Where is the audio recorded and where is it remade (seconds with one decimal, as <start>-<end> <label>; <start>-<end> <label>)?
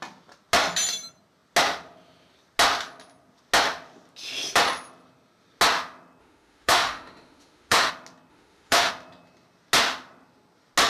0.0-6.2 recorded; 6.2-7.9 remade; 7.9-8.3 recorded; 8.3-8.9 remade; 8.9-10.9 recorded